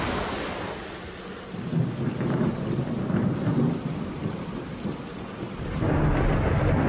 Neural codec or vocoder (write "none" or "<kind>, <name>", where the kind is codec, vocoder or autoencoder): none